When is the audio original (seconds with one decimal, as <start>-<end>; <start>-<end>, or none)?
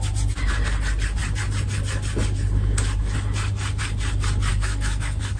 0.0-4.5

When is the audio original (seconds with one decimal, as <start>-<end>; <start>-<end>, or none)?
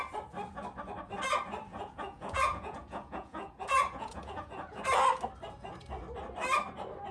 0.0-1.7; 4.8-7.1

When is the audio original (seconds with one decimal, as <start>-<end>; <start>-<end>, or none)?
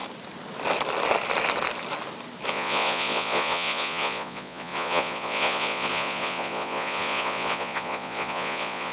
0.0-2.5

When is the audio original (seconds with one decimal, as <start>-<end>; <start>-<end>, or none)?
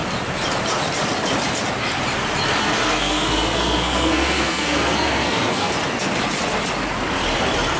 0.0-2.6; 5.7-7.8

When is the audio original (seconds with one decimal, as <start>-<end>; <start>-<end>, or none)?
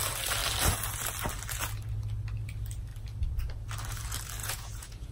0.0-4.4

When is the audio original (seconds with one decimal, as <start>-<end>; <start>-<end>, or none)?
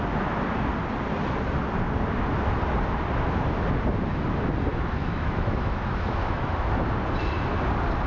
0.0-4.7; 6.8-8.1